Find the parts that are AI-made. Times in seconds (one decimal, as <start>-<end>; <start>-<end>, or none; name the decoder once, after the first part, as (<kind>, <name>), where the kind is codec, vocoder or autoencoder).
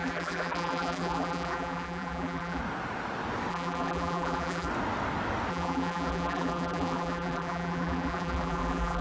0.0-2.6 (vocoder, BigVGAN v2); 3.5-4.7; 5.5-9.0